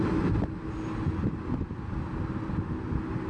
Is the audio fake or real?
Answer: real